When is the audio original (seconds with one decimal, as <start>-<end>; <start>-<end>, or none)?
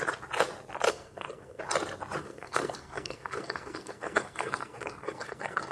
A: 0.0-0.9; 1.6-2.2